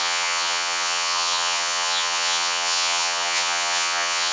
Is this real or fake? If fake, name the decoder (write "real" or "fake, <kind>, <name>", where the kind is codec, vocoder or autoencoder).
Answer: fake, vocoder, HiFi-GAN